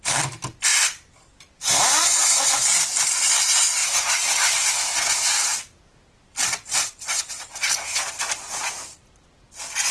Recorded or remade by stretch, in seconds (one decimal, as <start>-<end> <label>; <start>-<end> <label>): 0.0-0.7 recorded; 0.7-1.6 remade; 1.6-3.8 recorded; 3.8-4.8 remade; 4.8-6.3 recorded; 6.3-7.2 remade; 7.2-9.9 recorded